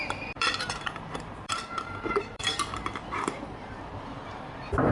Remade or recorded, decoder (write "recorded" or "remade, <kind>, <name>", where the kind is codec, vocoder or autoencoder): remade, vocoder, BigVGAN v2